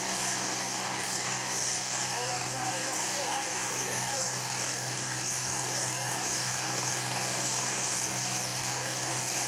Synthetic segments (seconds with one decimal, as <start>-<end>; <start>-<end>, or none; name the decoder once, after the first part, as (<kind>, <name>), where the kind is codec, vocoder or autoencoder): 0.0-9.5 (codec, DAC)